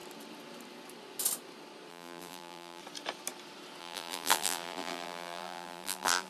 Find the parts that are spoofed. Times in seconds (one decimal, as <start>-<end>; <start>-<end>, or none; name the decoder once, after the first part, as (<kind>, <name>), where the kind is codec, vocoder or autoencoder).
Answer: 1.9-2.8 (vocoder, BigVGAN v2); 3.8-6.3